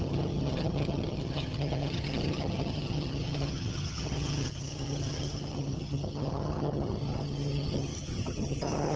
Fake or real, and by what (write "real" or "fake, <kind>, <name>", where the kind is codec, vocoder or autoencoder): fake, vocoder, HiFi-GAN